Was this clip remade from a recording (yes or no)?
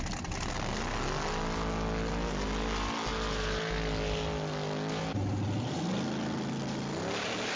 no